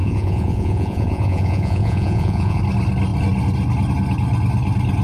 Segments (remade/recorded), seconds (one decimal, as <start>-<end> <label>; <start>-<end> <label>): 0.0-2.6 remade; 2.6-5.0 recorded